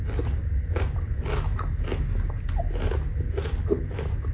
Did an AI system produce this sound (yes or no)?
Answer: no